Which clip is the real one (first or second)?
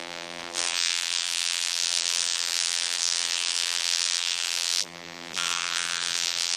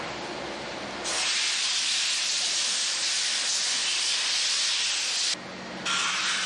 second